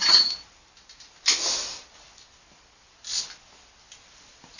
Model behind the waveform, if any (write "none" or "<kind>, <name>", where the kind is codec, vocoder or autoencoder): none